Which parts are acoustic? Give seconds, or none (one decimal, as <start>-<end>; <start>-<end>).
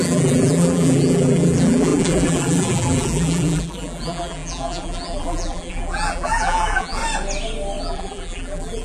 7.0-7.8